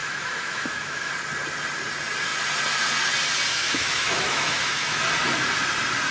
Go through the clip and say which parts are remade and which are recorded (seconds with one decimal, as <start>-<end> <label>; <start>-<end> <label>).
0.0-1.1 remade; 1.1-3.5 recorded; 3.5-5.0 remade; 5.0-6.1 recorded